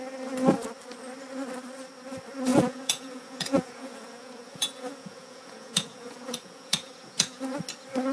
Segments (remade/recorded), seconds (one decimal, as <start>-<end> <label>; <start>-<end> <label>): 0.0-2.5 recorded; 2.5-7.4 remade; 7.4-8.1 recorded